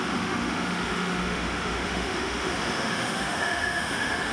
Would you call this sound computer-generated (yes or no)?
yes